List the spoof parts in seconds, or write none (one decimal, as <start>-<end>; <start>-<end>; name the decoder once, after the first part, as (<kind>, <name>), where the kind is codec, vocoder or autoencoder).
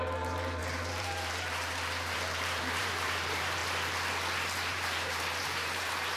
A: 0.0-3.6 (vocoder, BigVGAN v2); 4.7-6.2